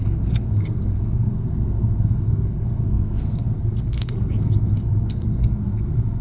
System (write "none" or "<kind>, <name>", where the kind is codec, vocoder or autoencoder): codec, SNAC